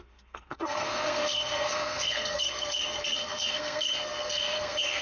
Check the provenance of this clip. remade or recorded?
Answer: remade